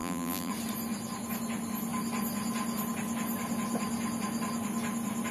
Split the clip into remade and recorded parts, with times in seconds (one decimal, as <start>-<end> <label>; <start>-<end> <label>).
0.0-0.5 remade; 0.5-5.3 recorded